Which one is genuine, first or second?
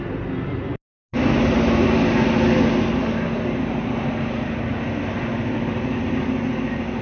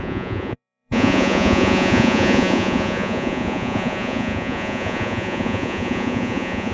first